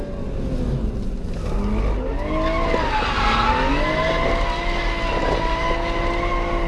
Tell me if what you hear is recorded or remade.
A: recorded